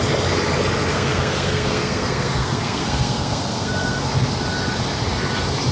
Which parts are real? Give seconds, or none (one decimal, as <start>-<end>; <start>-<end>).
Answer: 0.0-0.9; 4.1-5.7